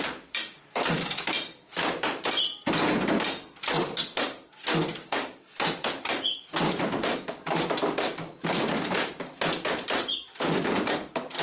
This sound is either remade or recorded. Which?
recorded